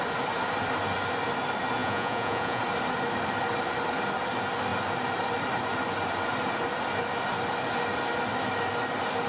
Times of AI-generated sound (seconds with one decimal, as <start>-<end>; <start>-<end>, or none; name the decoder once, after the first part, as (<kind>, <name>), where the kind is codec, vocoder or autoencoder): 1.8-2.6 (vocoder, Vocos)